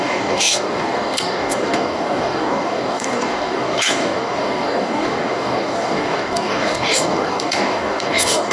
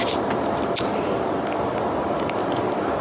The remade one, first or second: first